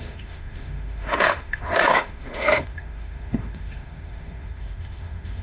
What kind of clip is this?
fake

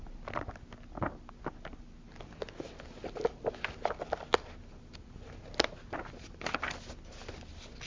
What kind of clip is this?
real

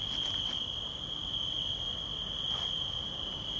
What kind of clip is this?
real